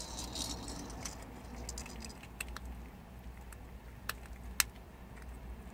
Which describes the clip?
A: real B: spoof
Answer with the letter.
A